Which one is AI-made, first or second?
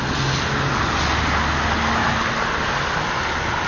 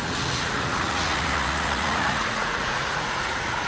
second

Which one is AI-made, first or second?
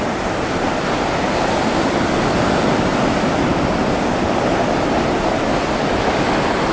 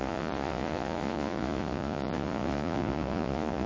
second